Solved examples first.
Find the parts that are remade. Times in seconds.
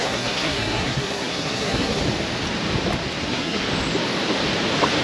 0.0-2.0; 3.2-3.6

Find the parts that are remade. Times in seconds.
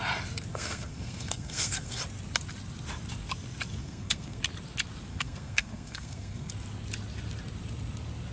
0.5-2.0; 3.8-4.4; 5.1-6.5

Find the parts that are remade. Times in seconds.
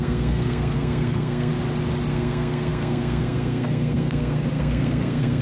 0.0-1.5; 2.1-5.4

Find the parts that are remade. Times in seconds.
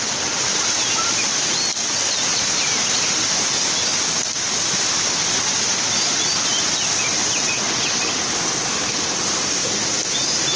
none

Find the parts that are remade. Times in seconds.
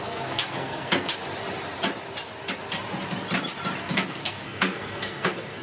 0.0-1.1; 3.8-5.6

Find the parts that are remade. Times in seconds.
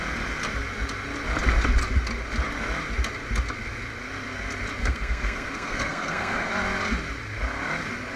4.8-6.5